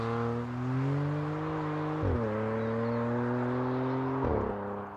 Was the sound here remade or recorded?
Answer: recorded